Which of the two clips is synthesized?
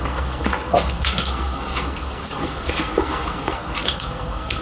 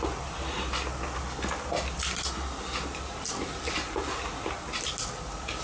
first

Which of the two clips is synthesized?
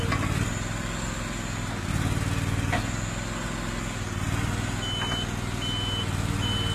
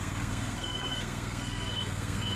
second